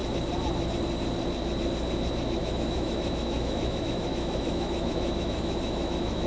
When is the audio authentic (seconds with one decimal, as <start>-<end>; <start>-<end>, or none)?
0.0-2.4